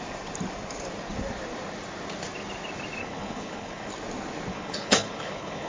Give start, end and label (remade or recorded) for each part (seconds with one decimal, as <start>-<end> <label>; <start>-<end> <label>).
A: 0.0-3.0 recorded; 3.0-3.9 remade; 3.9-4.5 recorded; 4.5-5.7 remade

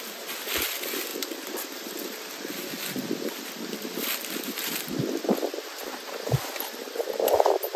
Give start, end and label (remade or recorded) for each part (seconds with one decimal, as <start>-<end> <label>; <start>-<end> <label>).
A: 0.0-1.1 recorded; 1.1-3.9 remade; 3.9-7.8 recorded

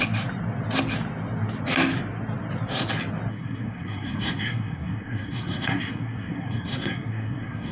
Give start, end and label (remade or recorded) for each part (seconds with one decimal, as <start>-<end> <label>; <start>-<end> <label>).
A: 0.0-3.3 recorded; 3.3-7.7 remade

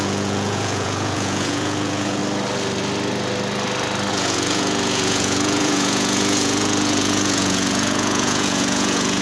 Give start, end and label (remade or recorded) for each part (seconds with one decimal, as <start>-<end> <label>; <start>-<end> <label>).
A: 0.0-2.2 remade; 2.2-4.1 recorded; 4.1-9.2 remade

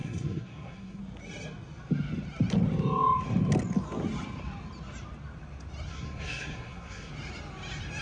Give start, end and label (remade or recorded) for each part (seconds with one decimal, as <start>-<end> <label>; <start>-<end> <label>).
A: 0.0-1.0 remade; 1.0-5.9 recorded; 5.9-7.1 remade; 7.1-8.0 recorded

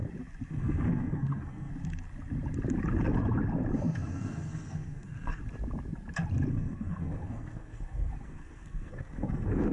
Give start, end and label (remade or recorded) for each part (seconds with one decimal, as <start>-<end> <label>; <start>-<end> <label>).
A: 0.0-0.5 recorded; 0.5-1.7 remade; 1.7-4.1 recorded; 4.1-5.4 remade; 5.4-6.5 recorded; 6.5-9.7 remade

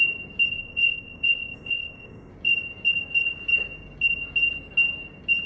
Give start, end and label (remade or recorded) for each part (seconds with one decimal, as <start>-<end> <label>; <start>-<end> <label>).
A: 0.0-0.5 recorded; 0.5-2.3 remade; 2.3-5.5 recorded

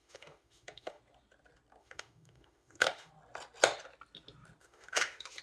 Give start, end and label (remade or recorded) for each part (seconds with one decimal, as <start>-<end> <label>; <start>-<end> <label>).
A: 0.0-1.0 remade; 1.0-1.8 recorded; 1.8-3.1 remade; 3.1-4.6 recorded; 4.6-5.4 remade